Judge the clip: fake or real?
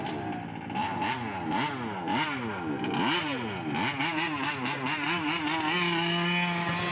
real